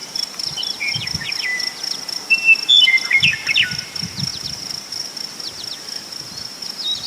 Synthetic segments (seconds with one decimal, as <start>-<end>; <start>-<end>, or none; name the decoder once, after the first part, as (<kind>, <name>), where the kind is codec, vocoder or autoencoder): 0.0-1.0 (vocoder, BigVGAN v2); 4.3-4.9

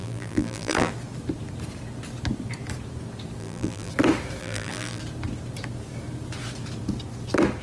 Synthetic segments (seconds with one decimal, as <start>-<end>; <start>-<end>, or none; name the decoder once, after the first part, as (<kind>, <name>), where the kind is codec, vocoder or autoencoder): 0.0-0.9 (vocoder, BigVGAN v2); 3.4-3.9; 4.4-5.0